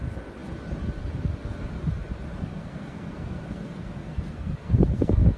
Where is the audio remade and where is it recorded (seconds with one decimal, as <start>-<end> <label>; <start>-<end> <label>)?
0.0-2.3 recorded; 2.3-5.4 remade